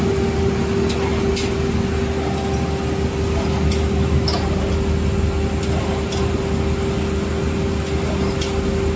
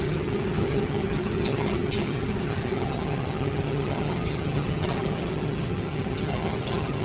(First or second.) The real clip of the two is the first